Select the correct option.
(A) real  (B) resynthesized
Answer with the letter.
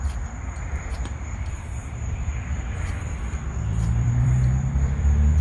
B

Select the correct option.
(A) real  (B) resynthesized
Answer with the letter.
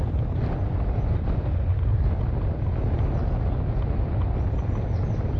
A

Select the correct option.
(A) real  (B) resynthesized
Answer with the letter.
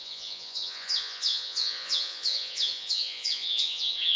B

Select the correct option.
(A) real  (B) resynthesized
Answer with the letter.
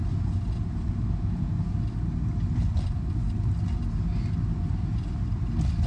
A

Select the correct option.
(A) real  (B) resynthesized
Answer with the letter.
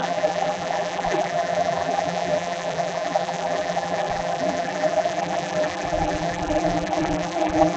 B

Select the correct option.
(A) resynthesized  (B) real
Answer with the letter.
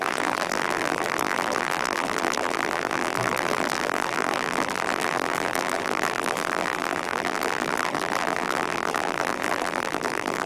A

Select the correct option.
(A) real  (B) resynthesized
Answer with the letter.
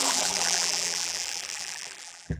B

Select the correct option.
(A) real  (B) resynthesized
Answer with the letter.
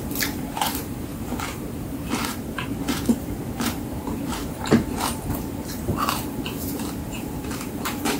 B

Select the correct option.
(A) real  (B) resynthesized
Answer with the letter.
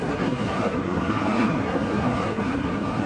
B